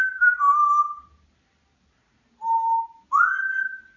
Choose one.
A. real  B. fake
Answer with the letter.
A